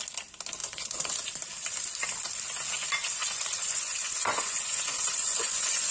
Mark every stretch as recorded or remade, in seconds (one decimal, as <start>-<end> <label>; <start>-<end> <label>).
0.0-0.6 recorded; 0.6-1.1 remade; 1.1-3.2 recorded; 3.2-5.9 remade